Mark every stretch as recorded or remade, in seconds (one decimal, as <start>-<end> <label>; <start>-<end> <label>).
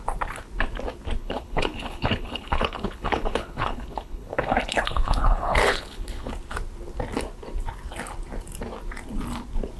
0.0-1.2 recorded; 1.2-6.3 remade; 6.3-9.8 recorded